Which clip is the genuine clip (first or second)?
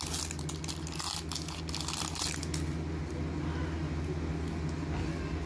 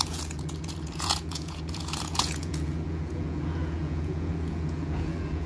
first